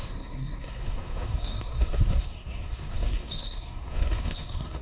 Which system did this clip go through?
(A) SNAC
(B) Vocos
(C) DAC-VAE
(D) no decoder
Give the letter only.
A